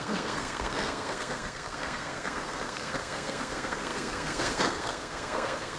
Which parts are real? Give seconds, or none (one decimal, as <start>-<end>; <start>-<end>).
none